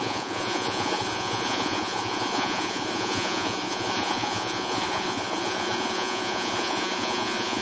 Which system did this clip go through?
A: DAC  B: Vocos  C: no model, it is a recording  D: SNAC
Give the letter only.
B